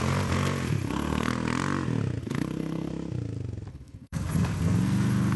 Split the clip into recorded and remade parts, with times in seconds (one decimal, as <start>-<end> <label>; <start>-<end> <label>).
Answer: 0.0-1.3 remade; 1.3-2.2 recorded; 2.2-2.9 remade; 2.9-3.7 recorded; 3.7-5.4 remade